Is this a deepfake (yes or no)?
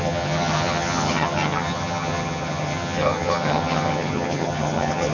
yes